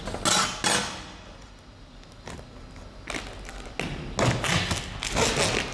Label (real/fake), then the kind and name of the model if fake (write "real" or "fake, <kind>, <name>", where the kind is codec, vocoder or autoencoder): real